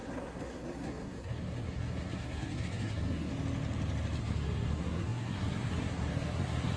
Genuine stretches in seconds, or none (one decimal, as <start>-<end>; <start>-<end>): 3.3-4.2